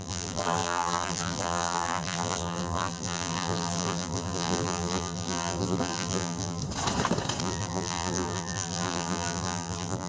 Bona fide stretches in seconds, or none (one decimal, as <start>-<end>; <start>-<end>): 6.6-7.4